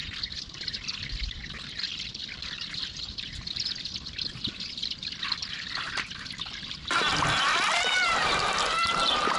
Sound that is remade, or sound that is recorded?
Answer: remade